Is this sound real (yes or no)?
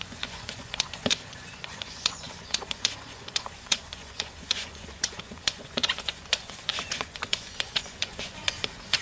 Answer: no